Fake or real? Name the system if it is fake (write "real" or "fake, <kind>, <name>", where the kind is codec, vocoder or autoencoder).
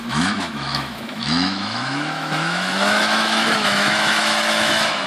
fake, autoencoder, DAC-VAE